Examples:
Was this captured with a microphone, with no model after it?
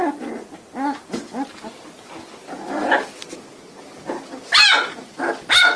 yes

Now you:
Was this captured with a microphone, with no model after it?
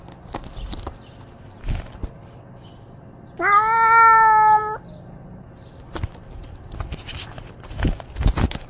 yes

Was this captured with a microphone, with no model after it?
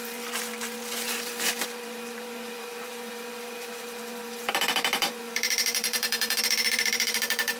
no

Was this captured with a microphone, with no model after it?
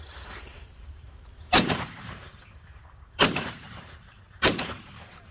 no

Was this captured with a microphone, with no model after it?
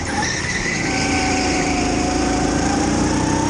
no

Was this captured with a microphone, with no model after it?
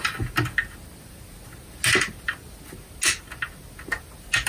yes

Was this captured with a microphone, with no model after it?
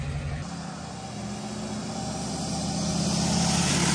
yes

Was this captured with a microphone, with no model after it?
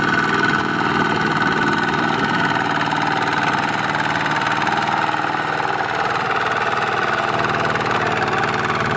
yes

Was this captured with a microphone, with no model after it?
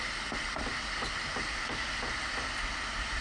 yes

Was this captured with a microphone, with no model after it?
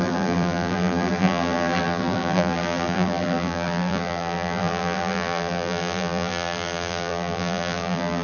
no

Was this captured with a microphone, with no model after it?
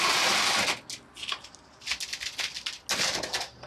yes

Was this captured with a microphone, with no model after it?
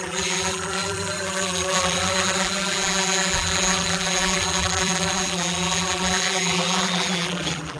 no